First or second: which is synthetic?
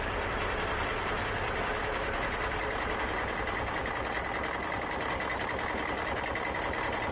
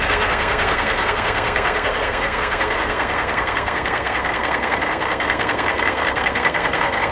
second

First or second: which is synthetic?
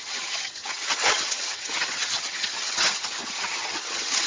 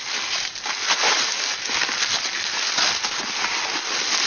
first